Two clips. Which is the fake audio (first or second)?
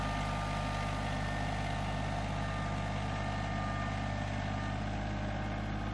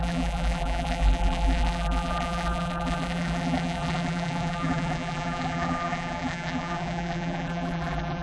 second